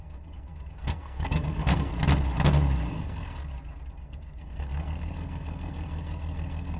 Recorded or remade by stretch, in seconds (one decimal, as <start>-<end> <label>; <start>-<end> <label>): 0.0-1.9 remade; 1.9-2.9 recorded; 2.9-3.4 remade; 3.4-3.9 recorded; 3.9-6.8 remade